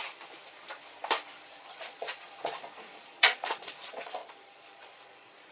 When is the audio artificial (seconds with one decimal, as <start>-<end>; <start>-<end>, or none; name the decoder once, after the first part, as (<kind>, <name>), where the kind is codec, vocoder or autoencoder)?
1.4-5.5 (vocoder, Vocos)

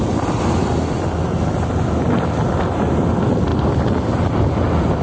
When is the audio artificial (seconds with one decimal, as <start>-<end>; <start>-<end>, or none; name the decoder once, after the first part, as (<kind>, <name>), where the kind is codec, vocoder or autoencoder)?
none

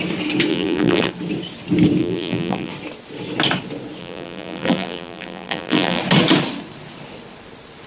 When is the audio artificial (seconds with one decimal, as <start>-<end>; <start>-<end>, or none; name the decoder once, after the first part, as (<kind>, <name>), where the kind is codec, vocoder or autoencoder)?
0.5-1.1 (vocoder, BigVGAN v2); 2.0-2.7; 4.0-6.0

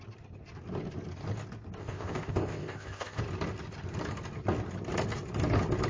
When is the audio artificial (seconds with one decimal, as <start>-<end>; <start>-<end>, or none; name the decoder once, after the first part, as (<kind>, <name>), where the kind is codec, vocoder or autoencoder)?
1.8-3.2 (codec, ZipCodec)

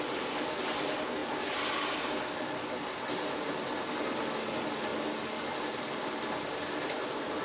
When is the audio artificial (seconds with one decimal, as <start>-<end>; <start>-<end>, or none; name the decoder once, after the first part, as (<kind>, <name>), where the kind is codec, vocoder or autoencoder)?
none